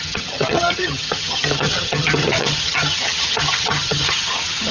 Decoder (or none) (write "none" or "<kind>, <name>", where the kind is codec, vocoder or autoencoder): vocoder, HiFi-GAN